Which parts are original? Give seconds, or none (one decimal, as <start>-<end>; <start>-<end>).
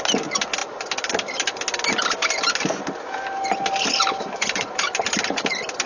0.0-5.9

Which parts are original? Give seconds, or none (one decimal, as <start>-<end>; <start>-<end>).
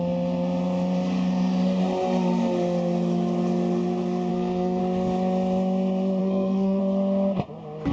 0.0-4.3; 4.8-6.2; 6.8-7.9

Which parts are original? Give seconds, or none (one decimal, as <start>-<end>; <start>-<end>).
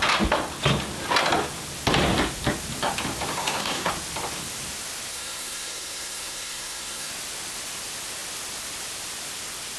0.0-3.3; 3.9-5.1; 7.1-9.8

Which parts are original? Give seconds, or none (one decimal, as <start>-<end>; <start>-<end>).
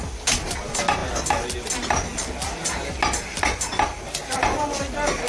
0.0-5.3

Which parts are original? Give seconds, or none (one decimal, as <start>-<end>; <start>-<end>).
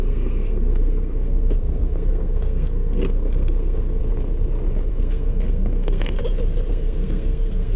4.0-4.9; 6.2-6.7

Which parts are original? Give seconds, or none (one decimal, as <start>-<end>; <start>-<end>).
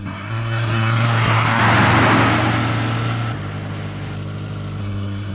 1.6-4.8